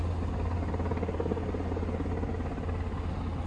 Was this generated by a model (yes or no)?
no